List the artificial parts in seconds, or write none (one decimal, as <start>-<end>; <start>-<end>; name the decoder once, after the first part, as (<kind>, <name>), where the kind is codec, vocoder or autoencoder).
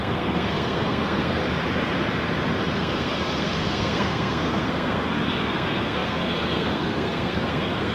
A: 0.0-1.4 (codec, SNAC); 2.7-7.9